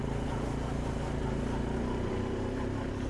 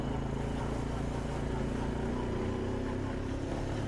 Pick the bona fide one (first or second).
second